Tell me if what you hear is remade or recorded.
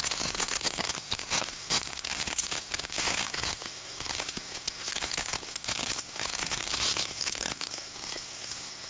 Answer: remade